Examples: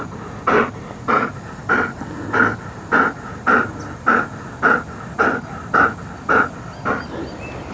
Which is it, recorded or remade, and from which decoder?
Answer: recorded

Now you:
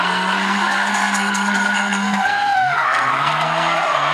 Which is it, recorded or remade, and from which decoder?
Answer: remade, codec, SNAC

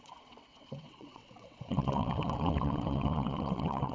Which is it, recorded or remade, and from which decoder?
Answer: remade, vocoder, WaveNeXt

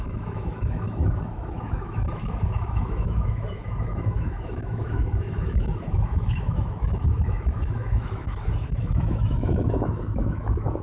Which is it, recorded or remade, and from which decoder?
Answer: remade, autoencoder, DAC-VAE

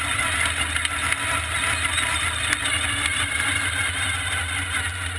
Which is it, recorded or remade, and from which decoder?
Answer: recorded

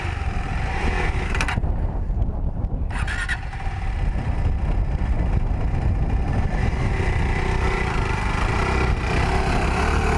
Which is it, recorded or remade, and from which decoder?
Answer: recorded